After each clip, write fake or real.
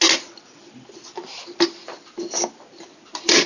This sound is real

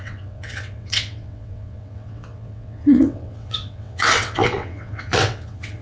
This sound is fake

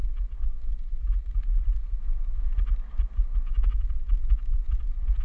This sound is real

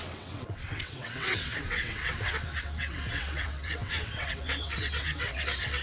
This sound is fake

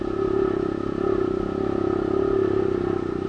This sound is real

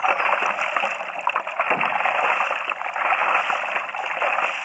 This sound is real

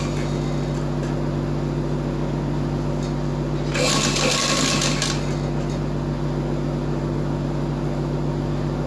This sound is real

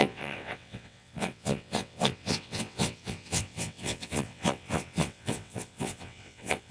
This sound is fake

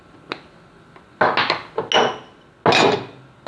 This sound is real